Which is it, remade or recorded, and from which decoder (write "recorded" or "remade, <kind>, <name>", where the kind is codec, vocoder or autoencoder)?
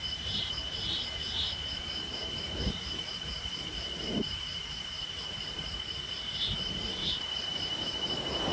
remade, vocoder, BigVGAN v2